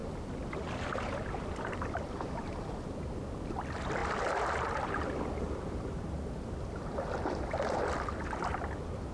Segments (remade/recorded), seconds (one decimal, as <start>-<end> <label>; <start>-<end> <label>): 0.0-4.0 remade; 4.0-7.8 recorded; 7.8-9.1 remade